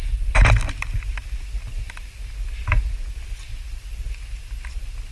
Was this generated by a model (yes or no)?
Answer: no